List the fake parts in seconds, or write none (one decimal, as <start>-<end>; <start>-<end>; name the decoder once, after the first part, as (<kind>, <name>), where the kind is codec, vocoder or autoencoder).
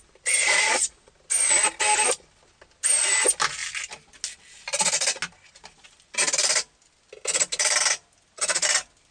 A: 0.4-1.1 (vocoder, Vocos)